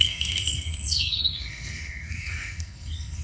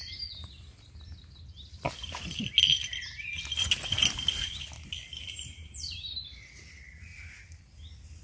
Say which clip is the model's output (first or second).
first